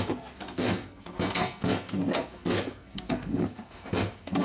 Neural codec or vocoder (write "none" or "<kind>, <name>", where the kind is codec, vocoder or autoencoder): codec, SNAC